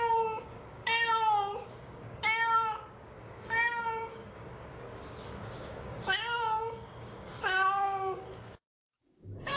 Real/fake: fake